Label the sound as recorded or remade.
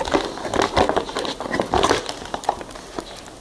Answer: recorded